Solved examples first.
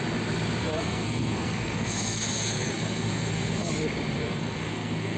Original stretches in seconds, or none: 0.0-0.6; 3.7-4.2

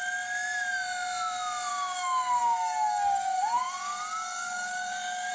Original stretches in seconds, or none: 0.0-1.7

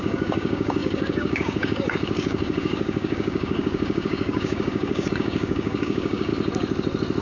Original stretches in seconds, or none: 6.3-7.2

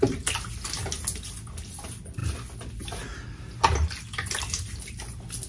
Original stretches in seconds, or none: 0.0-5.5

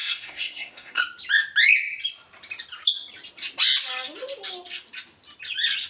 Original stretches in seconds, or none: 1.0-5.9

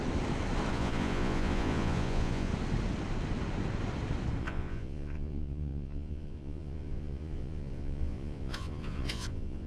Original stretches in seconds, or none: 0.0-0.7; 2.5-4.4